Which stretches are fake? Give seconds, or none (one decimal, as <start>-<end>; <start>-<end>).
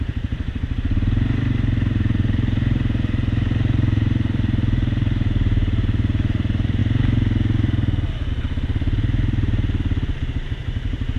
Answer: 0.0-6.8; 8.3-11.2